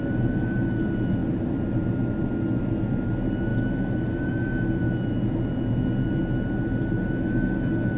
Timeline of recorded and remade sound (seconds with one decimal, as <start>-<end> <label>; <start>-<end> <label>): 0.0-8.0 recorded